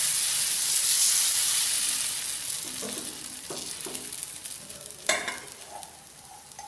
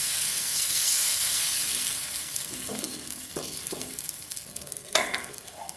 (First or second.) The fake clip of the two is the second